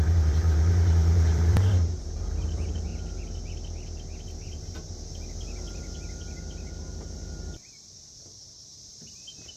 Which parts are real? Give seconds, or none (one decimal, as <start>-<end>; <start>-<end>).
2.9-7.9